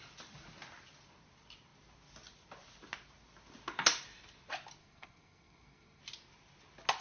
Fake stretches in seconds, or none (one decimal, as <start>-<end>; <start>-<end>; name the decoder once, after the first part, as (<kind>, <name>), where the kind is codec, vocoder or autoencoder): 4.8-6.0 (codec, SNAC)